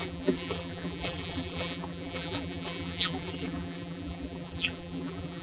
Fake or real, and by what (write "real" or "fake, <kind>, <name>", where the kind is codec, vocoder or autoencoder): fake, vocoder, BigVGAN v2